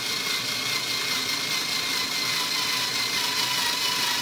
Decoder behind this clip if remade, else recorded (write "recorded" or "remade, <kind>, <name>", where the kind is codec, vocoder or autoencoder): recorded